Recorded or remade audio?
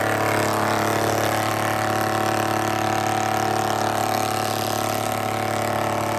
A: recorded